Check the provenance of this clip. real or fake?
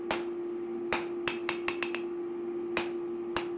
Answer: real